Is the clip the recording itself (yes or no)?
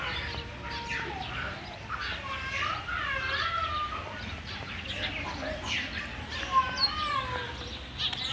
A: yes